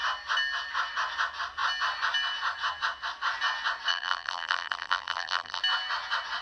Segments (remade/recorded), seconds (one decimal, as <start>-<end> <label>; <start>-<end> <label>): 0.0-3.9 recorded; 3.9-5.6 remade; 5.6-6.4 recorded